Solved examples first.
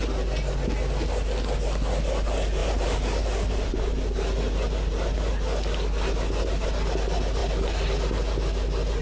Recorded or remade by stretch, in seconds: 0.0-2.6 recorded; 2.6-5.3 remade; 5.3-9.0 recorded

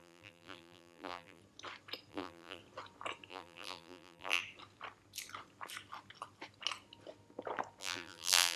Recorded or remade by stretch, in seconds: 0.0-1.4 remade; 1.4-2.1 recorded; 2.1-2.6 remade; 2.6-3.3 recorded; 3.3-4.4 remade; 4.4-7.8 recorded; 7.8-8.6 remade

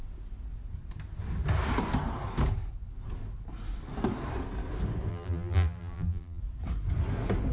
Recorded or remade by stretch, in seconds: 0.0-5.1 recorded; 5.1-6.4 remade; 6.4-7.5 recorded

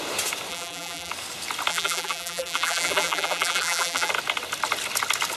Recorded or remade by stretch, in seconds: 0.0-0.5 recorded; 0.5-1.1 remade; 1.1-1.7 recorded; 1.7-4.1 remade; 4.1-5.4 recorded

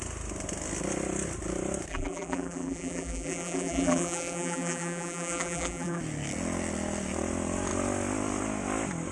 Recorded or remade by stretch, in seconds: 0.0-1.9 recorded; 1.9-6.0 remade; 6.0-9.1 recorded